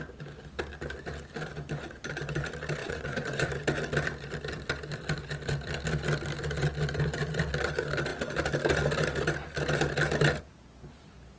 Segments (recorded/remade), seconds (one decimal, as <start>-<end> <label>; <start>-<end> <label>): 0.0-2.8 recorded; 2.8-3.5 remade; 3.5-11.4 recorded